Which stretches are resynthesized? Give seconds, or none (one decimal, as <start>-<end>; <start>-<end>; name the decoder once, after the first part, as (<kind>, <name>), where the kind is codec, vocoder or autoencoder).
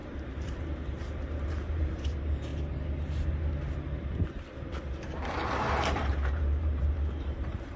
0.0-2.5 (vocoder, BigVGAN v2); 5.9-7.8